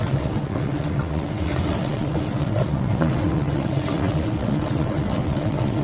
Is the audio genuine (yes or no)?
no